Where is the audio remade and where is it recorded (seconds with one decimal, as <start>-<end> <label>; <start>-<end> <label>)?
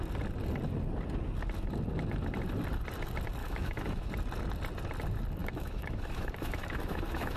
0.0-3.4 recorded; 3.4-4.1 remade; 4.1-5.4 recorded; 5.4-7.4 remade